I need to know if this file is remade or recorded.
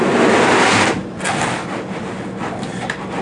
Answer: recorded